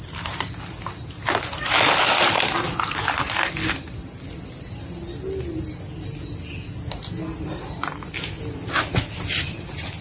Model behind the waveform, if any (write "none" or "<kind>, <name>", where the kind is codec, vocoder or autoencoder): none